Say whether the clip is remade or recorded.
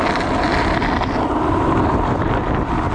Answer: recorded